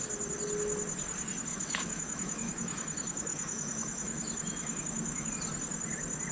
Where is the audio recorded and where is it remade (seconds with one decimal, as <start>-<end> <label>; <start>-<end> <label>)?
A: 0.0-1.5 recorded; 1.5-5.3 remade; 5.3-6.3 recorded